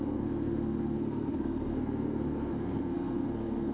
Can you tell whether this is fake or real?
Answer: fake